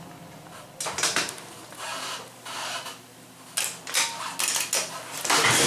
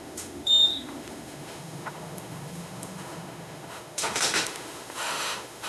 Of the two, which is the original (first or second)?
first